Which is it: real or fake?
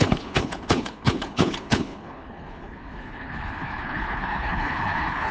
fake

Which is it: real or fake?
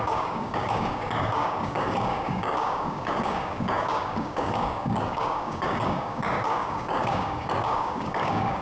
fake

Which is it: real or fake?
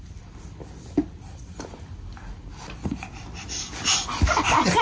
real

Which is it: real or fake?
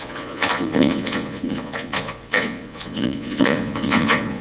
fake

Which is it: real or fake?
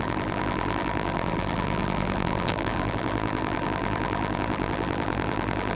fake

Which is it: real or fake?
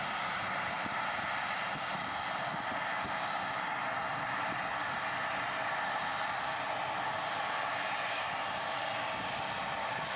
real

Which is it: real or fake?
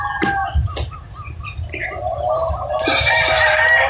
real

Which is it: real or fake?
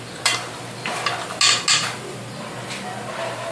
real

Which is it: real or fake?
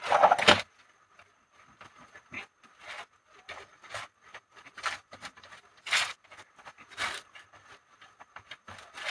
real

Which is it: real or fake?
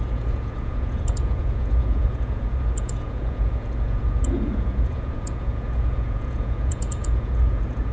fake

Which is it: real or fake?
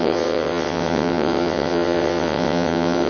fake